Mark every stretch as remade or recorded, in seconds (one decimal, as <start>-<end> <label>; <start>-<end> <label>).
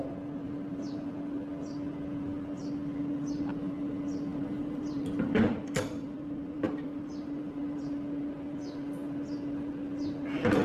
0.0-0.4 recorded; 0.4-1.1 remade; 1.1-4.3 recorded; 4.3-7.8 remade; 7.8-10.6 recorded